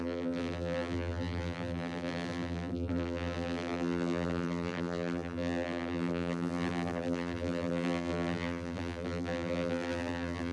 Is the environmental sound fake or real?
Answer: fake